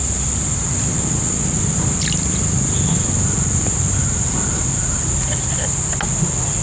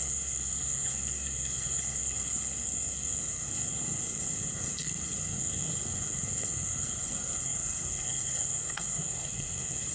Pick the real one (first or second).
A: first